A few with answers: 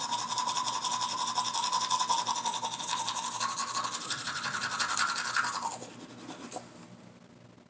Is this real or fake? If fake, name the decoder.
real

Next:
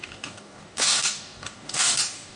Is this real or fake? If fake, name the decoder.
fake, codec, DAC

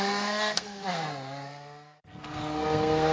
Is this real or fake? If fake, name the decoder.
fake, codec, SNAC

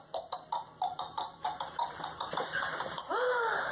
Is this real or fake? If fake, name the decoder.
fake, vocoder, BigVGAN v2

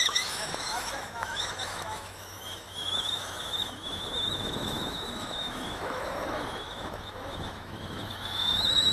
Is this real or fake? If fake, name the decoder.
fake, autoencoder, DAC-VAE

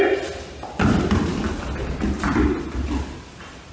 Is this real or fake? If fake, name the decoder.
real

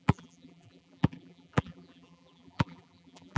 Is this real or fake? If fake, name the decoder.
fake, vocoder, BigVGAN v2